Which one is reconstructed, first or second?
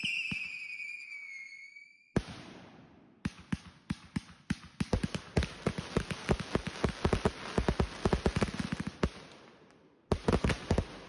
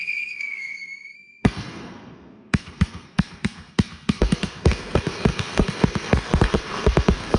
second